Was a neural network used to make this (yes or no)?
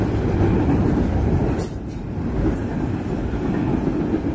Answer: no